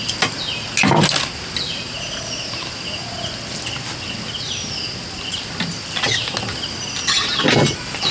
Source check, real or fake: real